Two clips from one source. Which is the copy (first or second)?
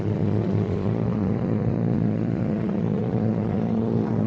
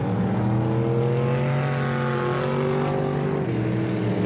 first